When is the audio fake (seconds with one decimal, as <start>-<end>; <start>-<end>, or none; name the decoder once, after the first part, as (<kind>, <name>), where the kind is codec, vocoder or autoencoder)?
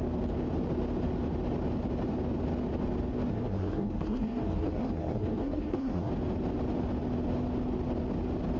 3.3-6.1 (codec, SNAC)